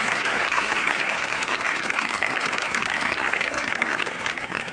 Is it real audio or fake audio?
fake